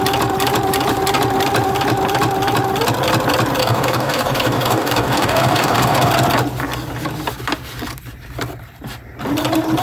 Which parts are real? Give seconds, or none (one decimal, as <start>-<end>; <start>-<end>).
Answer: 0.0-3.6; 6.1-9.8